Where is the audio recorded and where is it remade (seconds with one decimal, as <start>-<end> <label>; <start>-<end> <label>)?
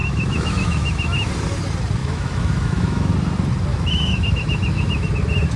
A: 0.0-1.3 remade; 1.3-2.0 recorded; 2.0-3.1 remade; 3.1-3.7 recorded; 3.7-5.1 remade; 5.1-5.6 recorded